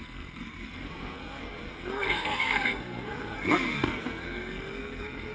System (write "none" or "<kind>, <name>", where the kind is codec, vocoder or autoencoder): codec, SNAC